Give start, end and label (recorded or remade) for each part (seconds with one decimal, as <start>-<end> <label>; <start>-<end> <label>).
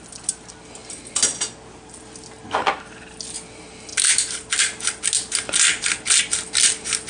0.0-7.1 recorded